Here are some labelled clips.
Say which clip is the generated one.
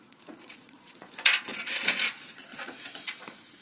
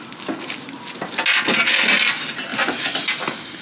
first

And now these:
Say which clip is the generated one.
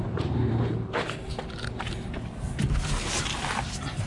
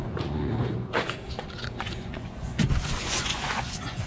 second